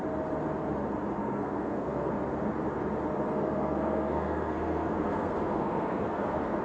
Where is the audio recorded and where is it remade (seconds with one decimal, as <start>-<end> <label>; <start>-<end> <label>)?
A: 0.0-1.2 recorded; 1.2-2.1 remade; 2.1-3.3 recorded; 3.3-6.6 remade